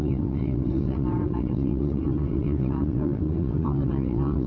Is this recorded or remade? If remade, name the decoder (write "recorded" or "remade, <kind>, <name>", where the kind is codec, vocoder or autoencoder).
remade, vocoder, WaveNeXt